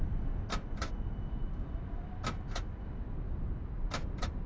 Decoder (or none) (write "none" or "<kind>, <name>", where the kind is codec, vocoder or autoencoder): none